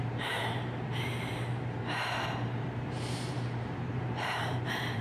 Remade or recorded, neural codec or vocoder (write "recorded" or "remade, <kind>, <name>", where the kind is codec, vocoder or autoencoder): remade, vocoder, BigVGAN v2